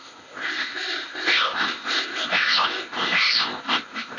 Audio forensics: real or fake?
fake